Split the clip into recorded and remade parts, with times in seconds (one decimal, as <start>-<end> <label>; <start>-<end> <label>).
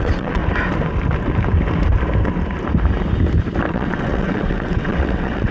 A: 0.0-0.4 remade; 0.4-3.7 recorded; 3.7-5.5 remade